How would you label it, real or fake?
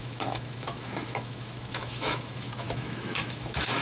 fake